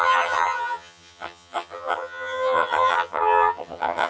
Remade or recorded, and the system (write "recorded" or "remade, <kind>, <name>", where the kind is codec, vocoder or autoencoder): remade, vocoder, HiFi-GAN